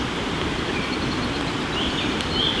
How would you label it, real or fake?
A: real